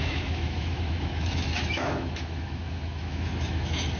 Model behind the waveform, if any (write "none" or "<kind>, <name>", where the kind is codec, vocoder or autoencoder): autoencoder, DAC-VAE